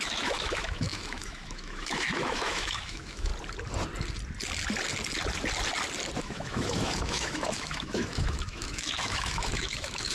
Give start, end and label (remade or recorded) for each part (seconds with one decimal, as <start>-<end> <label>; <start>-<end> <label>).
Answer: 0.0-3.3 remade; 3.3-6.2 recorded; 6.2-10.1 remade

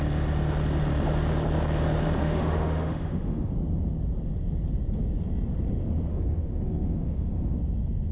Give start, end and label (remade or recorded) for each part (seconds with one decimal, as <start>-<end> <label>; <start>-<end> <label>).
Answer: 0.0-2.2 recorded; 2.2-3.5 remade; 3.5-6.1 recorded; 6.1-7.6 remade; 7.6-8.1 recorded